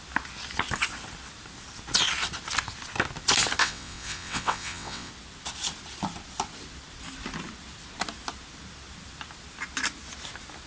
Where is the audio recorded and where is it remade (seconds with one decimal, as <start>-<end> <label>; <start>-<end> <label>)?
0.0-3.6 recorded; 3.6-5.1 remade; 5.1-10.7 recorded